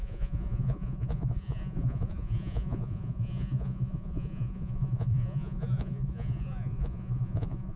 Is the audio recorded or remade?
remade